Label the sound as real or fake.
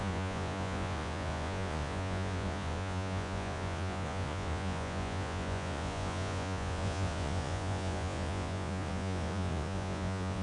fake